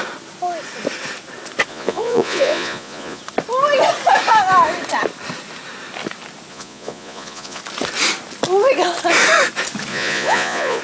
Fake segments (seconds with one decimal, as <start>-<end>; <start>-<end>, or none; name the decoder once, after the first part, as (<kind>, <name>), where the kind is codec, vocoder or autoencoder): 1.7-3.2 (vocoder, Vocos); 6.5-7.6; 9.9-10.8